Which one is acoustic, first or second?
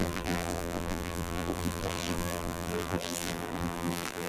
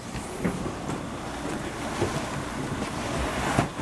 second